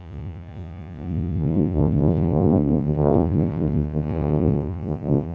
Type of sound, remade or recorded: remade